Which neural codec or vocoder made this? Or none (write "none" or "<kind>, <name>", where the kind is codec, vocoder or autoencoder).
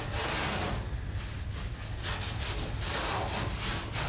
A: none